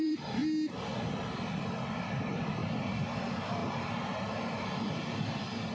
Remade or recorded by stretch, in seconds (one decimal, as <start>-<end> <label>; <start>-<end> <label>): 0.0-0.4 remade; 0.4-1.1 recorded; 1.1-2.6 remade; 2.6-3.1 recorded; 3.1-3.6 remade; 3.6-5.7 recorded